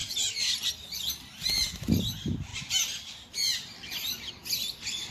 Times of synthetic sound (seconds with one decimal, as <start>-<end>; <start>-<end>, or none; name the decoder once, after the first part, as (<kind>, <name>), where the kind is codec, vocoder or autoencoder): 0.0-1.8 (vocoder, BigVGAN v2); 2.5-4.3